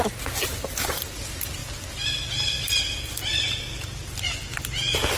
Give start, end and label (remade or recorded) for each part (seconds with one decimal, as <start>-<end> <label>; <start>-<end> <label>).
0.0-5.2 recorded